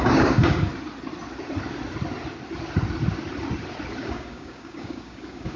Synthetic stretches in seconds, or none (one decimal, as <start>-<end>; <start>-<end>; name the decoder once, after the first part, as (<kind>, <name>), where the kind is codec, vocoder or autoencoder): 0.0-0.7 (codec, DAC); 4.0-5.6